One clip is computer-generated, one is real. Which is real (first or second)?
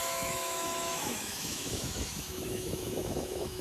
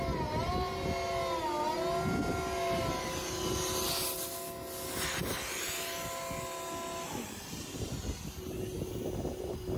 second